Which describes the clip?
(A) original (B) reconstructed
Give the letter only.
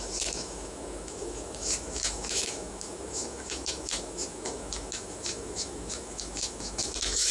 B